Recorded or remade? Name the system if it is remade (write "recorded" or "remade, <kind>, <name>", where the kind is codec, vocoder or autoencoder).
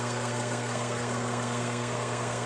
remade, codec, SNAC